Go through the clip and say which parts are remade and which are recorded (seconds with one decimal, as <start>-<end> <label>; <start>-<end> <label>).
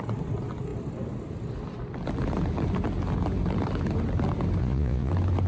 0.0-4.6 recorded; 4.6-5.1 remade; 5.1-5.5 recorded